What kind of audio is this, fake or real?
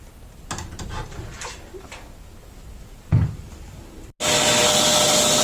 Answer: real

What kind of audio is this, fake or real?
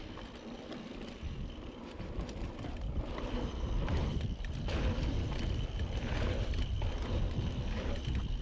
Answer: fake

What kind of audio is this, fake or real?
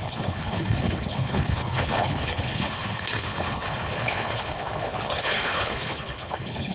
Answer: fake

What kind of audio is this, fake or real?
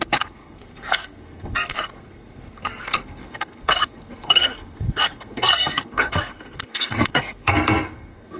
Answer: fake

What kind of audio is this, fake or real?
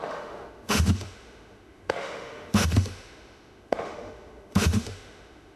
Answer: fake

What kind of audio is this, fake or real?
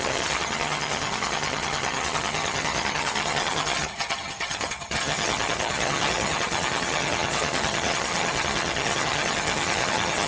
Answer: fake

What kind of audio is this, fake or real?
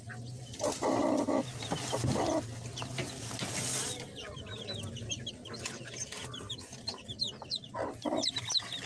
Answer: real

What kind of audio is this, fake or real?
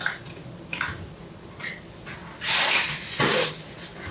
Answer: real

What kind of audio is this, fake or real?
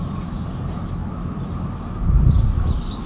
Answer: real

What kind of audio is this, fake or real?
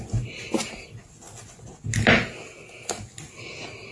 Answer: real